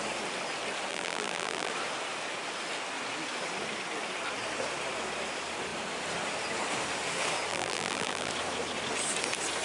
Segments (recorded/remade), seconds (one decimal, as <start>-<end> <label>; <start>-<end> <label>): 0.0-0.9 recorded; 0.9-1.7 remade; 1.7-7.5 recorded; 7.5-8.3 remade; 8.3-9.6 recorded